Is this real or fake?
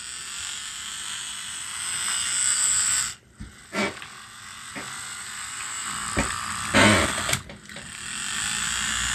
real